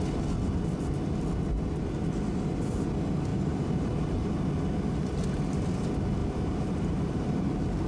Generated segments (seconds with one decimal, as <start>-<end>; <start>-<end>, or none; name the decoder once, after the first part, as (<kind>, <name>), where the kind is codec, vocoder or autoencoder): 3.3-4.3 (vocoder, BigVGAN v2); 6.2-7.9